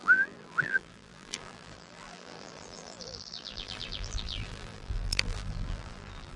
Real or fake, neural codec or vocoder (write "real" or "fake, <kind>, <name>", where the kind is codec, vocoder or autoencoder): fake, vocoder, BigVGAN v2